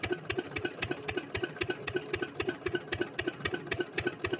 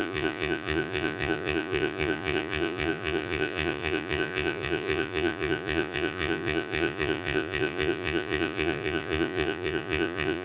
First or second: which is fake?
second